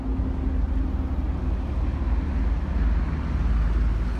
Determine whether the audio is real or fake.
real